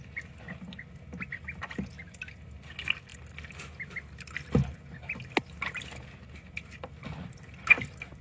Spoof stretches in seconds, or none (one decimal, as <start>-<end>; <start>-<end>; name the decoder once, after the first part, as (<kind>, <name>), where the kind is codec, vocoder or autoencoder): none